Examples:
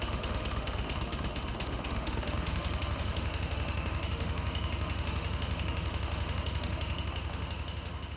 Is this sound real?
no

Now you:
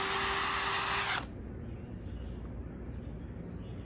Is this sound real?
yes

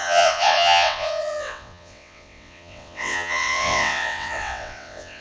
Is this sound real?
no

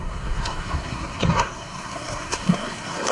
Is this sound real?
no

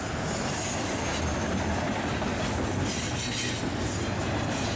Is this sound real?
yes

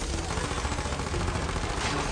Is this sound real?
yes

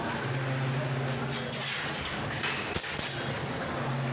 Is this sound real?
yes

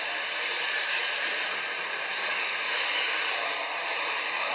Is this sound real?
yes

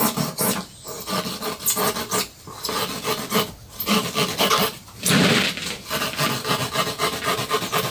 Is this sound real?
yes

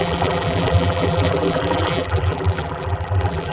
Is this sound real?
no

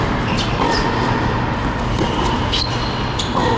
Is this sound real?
yes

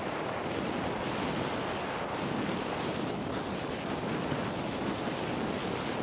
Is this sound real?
yes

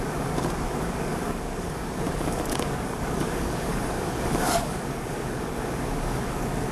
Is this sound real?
no